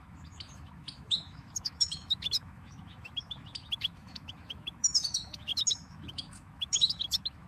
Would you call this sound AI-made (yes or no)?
yes